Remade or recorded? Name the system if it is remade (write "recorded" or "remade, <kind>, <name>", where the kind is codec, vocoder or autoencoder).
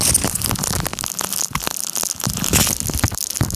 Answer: recorded